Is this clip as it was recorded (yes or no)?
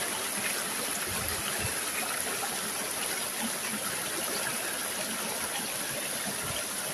yes